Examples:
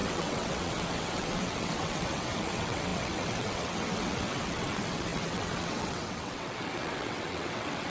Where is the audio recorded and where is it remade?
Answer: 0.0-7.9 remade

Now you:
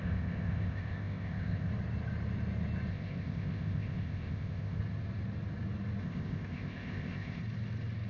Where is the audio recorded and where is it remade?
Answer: 0.0-1.7 remade; 1.7-2.9 recorded; 2.9-4.8 remade; 4.8-6.0 recorded; 6.0-7.4 remade; 7.4-8.1 recorded

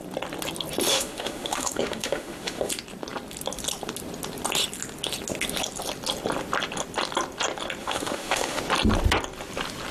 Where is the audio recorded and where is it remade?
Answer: 0.0-0.9 recorded; 0.9-2.7 remade; 2.7-7.8 recorded; 7.8-8.6 remade; 8.6-9.9 recorded

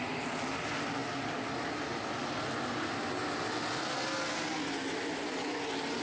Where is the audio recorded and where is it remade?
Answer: 0.0-6.0 recorded

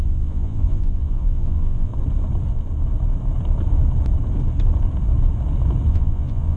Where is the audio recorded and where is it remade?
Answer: 0.0-1.9 remade; 1.9-5.9 recorded; 5.9-6.6 remade

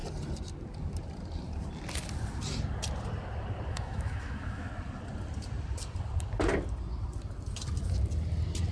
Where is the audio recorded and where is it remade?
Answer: 0.0-3.7 recorded; 3.7-4.7 remade; 4.7-8.7 recorded

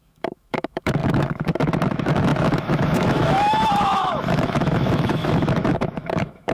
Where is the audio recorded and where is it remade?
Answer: 0.0-6.5 remade